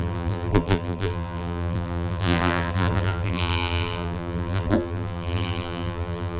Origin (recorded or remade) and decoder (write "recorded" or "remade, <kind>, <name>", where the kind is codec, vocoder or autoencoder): remade, vocoder, BigVGAN v2